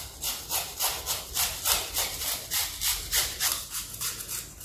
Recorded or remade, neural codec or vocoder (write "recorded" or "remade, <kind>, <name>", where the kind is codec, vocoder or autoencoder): remade, vocoder, BigVGAN v2